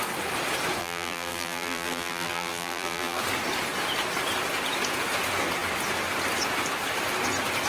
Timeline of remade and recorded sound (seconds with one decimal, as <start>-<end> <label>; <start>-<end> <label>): 0.0-0.8 recorded; 0.8-3.2 remade; 3.2-7.7 recorded